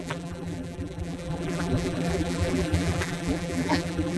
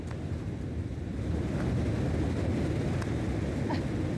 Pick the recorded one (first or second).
second